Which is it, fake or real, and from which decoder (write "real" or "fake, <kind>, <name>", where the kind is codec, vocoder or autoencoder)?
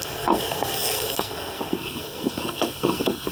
fake, codec, SNAC